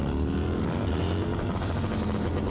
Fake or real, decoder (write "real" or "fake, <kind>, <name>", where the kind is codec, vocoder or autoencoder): real